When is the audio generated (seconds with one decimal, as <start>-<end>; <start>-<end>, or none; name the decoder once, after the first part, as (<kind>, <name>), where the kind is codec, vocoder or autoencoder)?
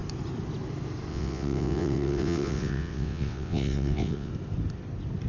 1.1-4.3 (vocoder, WaveNeXt)